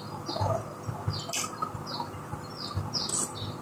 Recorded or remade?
recorded